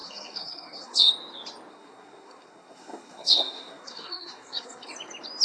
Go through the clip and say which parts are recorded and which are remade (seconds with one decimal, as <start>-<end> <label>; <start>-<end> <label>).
0.0-1.1 remade; 1.1-1.7 recorded; 1.7-4.9 remade; 4.9-5.4 recorded